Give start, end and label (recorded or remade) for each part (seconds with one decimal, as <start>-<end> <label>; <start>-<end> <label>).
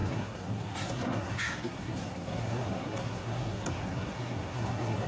0.0-5.1 remade